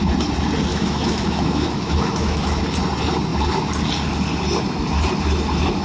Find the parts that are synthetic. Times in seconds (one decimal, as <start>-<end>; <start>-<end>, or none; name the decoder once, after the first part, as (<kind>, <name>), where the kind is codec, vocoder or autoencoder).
0.7-2.6 (autoencoder, DAC-VAE)